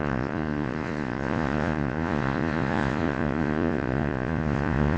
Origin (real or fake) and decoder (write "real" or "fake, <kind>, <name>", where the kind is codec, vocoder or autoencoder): fake, vocoder, Vocos